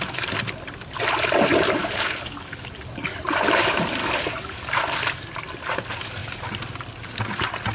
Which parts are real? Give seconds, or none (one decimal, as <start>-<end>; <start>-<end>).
0.0-1.8; 2.7-4.0; 4.8-7.7